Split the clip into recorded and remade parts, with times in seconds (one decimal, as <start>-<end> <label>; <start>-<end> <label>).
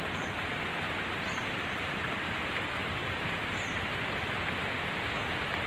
0.0-0.7 recorded; 0.7-2.6 remade; 2.6-3.0 recorded; 3.0-3.8 remade; 3.8-5.7 recorded